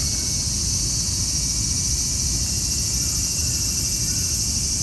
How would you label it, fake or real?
real